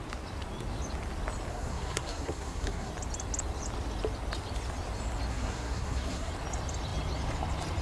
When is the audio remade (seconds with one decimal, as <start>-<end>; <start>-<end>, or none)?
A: 1.5-2.9; 5.3-6.3